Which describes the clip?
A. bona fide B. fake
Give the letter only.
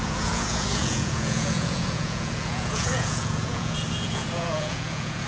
B